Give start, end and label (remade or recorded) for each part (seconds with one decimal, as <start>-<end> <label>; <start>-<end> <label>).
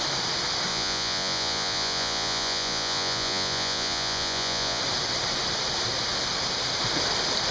0.0-0.7 recorded; 0.7-4.8 remade; 4.8-7.5 recorded